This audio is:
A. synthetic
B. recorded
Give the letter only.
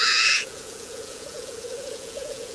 A